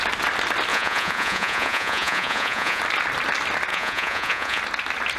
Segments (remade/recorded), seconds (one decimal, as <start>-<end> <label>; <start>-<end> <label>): 0.0-0.7 recorded; 0.7-2.8 remade; 2.8-3.7 recorded; 3.7-4.6 remade; 4.6-5.2 recorded